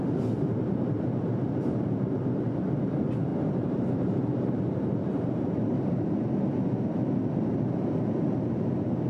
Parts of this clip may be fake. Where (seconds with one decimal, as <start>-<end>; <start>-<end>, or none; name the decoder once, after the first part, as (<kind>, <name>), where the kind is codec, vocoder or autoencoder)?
3.3-6.3 (vocoder, BigVGAN v2)